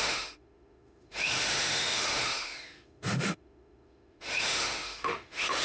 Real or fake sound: fake